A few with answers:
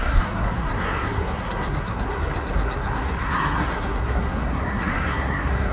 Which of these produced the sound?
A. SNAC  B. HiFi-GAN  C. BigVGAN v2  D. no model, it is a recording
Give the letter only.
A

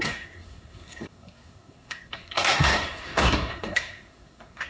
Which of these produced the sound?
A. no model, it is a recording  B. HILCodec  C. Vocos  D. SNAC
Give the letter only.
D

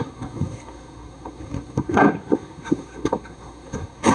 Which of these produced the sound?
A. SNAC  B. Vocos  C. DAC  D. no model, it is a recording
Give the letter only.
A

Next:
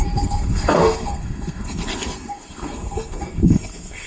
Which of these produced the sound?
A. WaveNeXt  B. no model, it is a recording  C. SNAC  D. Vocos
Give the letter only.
C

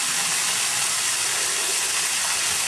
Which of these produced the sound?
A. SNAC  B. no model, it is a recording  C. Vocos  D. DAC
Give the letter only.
B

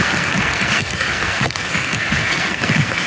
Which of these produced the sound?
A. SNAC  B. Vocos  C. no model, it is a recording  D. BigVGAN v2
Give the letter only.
A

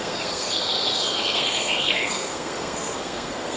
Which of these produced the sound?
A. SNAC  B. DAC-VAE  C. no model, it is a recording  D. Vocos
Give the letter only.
A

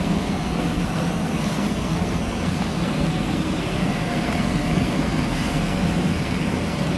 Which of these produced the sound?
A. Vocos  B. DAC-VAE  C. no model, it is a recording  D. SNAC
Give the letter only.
D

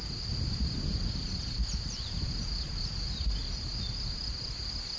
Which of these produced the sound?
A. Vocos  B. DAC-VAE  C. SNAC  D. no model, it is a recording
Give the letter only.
D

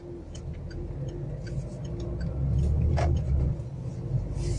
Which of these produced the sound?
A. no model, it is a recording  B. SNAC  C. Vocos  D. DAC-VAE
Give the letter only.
A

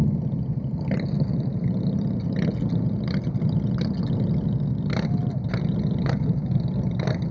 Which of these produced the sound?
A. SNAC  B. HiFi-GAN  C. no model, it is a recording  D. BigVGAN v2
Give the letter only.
C